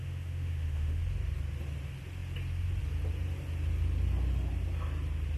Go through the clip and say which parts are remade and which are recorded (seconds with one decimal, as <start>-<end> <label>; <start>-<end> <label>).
0.0-1.0 remade; 1.0-5.4 recorded